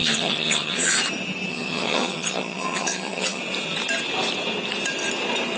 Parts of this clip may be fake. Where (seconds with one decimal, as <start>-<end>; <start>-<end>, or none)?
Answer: 0.0-0.9; 1.5-3.4